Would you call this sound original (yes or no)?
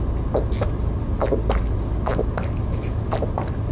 yes